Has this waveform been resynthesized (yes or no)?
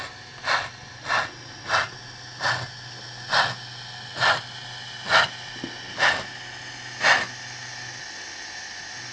no